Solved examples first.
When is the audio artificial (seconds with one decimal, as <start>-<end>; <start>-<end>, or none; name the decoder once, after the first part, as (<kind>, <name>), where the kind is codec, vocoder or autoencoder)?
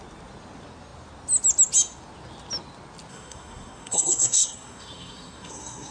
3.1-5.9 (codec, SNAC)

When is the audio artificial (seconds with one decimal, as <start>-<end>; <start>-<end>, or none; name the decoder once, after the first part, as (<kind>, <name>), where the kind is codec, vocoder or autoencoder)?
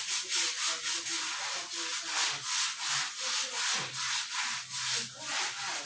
none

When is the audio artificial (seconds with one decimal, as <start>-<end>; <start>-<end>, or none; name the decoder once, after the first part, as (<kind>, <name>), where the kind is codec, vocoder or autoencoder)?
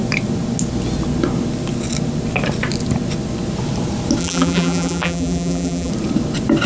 4.2-5.9 (vocoder, BigVGAN v2)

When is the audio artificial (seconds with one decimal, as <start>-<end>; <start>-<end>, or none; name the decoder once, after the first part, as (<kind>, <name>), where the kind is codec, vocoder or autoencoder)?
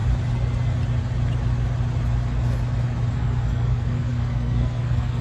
3.1-5.2 (codec, SNAC)